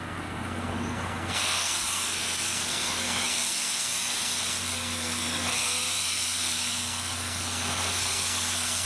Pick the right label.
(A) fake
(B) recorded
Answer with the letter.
A